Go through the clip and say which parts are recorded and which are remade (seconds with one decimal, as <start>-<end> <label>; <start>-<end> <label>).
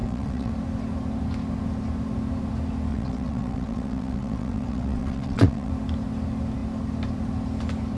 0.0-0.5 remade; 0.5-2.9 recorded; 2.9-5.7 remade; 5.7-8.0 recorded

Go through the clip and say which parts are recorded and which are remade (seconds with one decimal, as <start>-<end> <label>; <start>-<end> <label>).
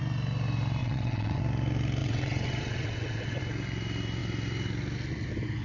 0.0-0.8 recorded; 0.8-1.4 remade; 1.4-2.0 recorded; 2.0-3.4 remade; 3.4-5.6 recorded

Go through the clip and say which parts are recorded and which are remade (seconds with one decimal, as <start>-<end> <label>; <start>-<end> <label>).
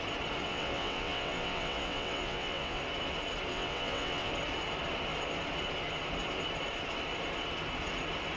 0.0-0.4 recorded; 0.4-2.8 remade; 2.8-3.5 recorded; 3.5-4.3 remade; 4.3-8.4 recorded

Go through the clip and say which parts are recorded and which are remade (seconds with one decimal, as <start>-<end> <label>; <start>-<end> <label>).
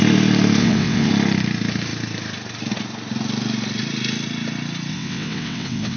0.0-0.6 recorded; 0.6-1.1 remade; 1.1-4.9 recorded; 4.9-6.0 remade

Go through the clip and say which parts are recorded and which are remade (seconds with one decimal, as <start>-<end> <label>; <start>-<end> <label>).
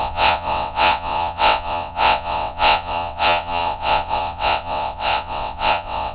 0.0-6.1 remade